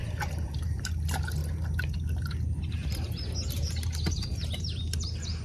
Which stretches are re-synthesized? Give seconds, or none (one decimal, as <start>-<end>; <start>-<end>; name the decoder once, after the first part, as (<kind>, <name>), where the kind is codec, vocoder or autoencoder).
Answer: 0.0-0.9 (vocoder, BigVGAN v2)